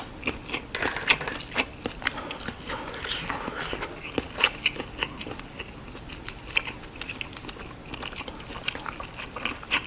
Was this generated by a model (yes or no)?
no